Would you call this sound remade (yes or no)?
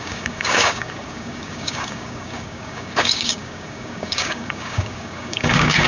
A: yes